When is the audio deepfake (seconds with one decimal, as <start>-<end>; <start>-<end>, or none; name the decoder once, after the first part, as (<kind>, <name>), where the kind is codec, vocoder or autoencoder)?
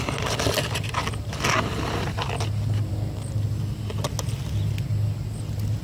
none